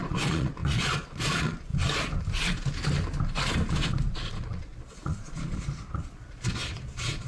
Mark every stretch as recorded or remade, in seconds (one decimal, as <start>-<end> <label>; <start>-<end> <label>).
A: 0.0-1.7 remade; 1.7-3.7 recorded; 3.7-7.3 remade